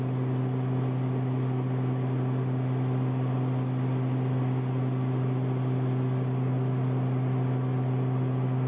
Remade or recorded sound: recorded